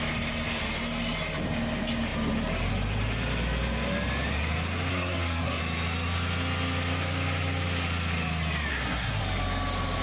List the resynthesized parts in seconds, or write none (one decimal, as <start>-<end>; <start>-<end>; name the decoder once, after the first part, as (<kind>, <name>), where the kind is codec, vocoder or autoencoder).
4.9-5.6 (codec, SNAC); 8.7-9.2